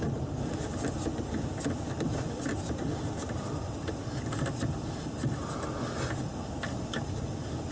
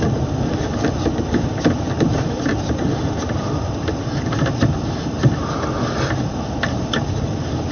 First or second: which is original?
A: first